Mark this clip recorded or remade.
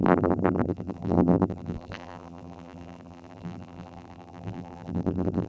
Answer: remade